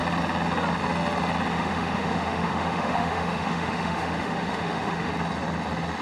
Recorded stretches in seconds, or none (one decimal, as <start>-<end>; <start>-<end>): 0.0-1.5; 5.1-6.0